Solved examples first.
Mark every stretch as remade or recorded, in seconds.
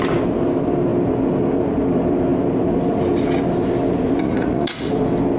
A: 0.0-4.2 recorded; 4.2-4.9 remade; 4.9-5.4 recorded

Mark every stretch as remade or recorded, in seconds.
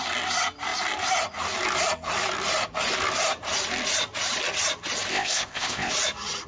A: 0.0-5.1 recorded; 5.1-5.9 remade; 5.9-6.5 recorded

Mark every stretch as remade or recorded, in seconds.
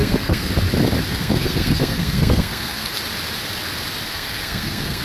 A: 0.0-0.5 remade; 0.5-1.1 recorded; 1.1-3.0 remade; 3.0-4.1 recorded; 4.1-5.0 remade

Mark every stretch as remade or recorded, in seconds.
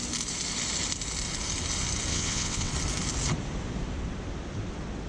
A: 0.0-2.1 recorded; 2.1-2.7 remade; 2.7-5.1 recorded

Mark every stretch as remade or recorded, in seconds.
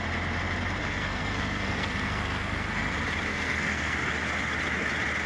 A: 0.0-0.8 recorded; 0.8-2.9 remade; 2.9-3.3 recorded; 3.3-4.1 remade; 4.1-5.3 recorded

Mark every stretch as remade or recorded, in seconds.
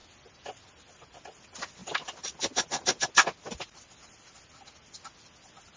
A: 0.0-5.8 recorded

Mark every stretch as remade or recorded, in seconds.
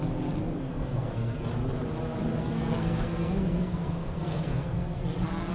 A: 0.0-0.4 recorded; 0.4-1.5 remade; 1.5-2.4 recorded; 2.4-5.5 remade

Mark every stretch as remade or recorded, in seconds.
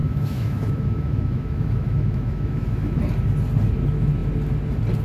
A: 0.0-3.0 remade; 3.0-5.0 recorded